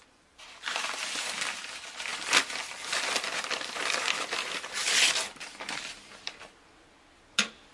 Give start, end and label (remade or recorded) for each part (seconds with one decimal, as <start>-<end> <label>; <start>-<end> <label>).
0.0-7.7 recorded

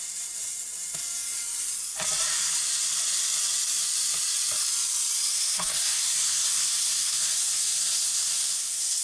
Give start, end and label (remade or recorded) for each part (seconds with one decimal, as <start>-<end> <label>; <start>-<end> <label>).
0.0-5.3 recorded; 5.3-9.0 remade

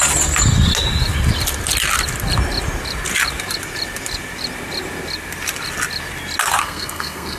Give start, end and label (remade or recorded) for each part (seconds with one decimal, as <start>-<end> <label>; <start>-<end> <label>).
0.0-6.6 recorded; 6.6-7.4 remade

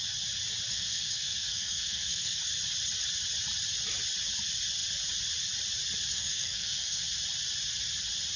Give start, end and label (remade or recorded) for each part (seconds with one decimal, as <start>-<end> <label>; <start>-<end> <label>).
0.0-0.7 recorded; 0.7-2.4 remade; 2.4-6.1 recorded; 6.1-7.0 remade; 7.0-8.4 recorded

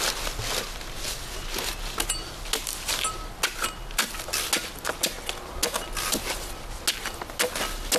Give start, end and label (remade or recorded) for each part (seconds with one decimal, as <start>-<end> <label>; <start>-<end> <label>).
0.0-8.0 recorded